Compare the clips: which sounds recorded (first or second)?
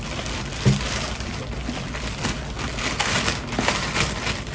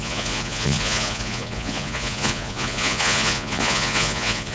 first